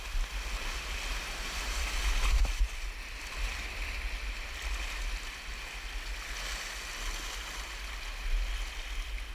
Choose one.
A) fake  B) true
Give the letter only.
B